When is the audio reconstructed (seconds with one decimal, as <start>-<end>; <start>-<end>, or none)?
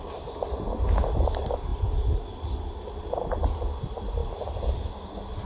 none